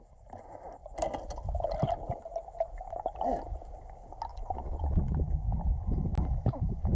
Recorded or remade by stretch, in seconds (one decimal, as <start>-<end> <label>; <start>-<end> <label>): 0.0-4.3 recorded; 4.3-5.2 remade; 5.2-7.0 recorded